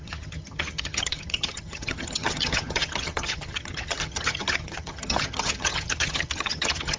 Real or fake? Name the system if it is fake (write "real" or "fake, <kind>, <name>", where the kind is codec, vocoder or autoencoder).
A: fake, vocoder, HiFi-GAN